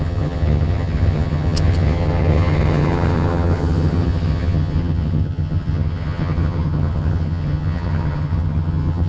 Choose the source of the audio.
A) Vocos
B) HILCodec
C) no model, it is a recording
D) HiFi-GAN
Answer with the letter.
D